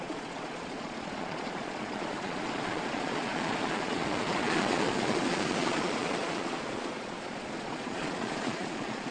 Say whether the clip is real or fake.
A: fake